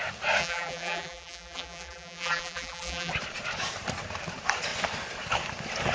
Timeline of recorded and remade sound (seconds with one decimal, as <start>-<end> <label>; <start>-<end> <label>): 0.0-0.4 recorded; 0.4-3.1 remade; 3.1-5.9 recorded